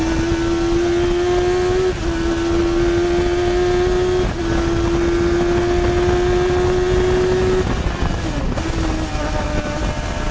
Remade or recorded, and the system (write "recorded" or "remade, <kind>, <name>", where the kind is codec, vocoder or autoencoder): recorded